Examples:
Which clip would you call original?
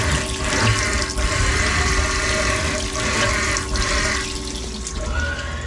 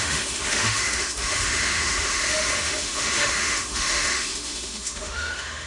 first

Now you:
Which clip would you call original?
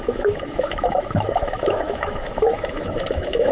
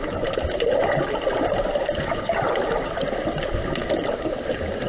second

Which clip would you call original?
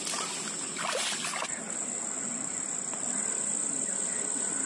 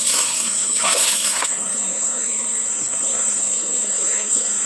first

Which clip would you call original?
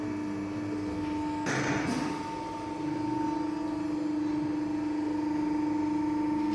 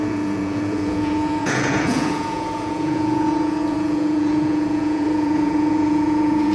first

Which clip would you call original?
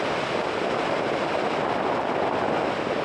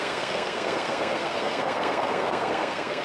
first